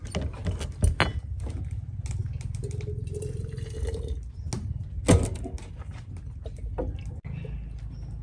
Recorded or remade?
recorded